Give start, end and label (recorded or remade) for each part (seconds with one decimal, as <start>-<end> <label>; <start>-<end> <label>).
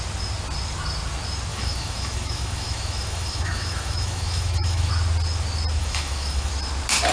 0.0-1.5 recorded; 1.5-4.9 remade; 4.9-5.8 recorded; 5.8-6.5 remade; 6.5-7.1 recorded